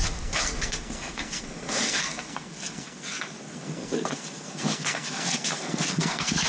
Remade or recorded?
remade